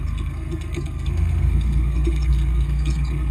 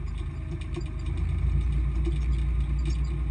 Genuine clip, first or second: second